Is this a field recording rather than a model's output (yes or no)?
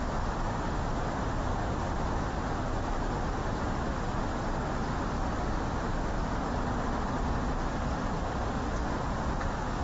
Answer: yes